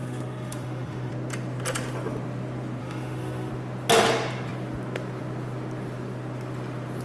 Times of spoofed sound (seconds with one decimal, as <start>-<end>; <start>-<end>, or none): 0.0-1.1; 2.8-3.5